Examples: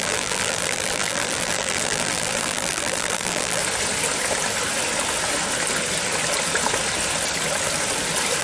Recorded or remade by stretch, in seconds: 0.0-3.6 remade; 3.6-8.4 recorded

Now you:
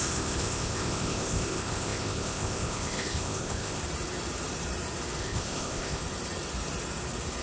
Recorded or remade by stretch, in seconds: 0.0-3.8 remade; 3.8-5.2 recorded; 5.2-6.0 remade; 6.0-7.4 recorded

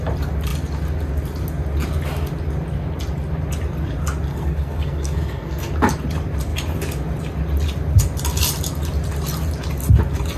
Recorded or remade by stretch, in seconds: 0.0-4.3 recorded; 4.3-5.7 remade; 5.7-10.4 recorded

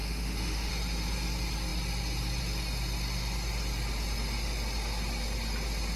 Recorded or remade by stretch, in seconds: 0.0-0.7 remade; 0.7-6.0 recorded